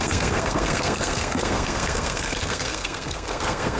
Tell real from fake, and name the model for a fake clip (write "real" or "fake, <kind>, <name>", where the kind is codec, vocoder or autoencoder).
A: fake, codec, SNAC